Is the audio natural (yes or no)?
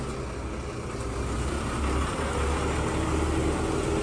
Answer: yes